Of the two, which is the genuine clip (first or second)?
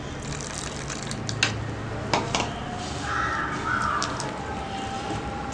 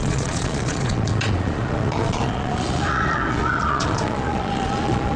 first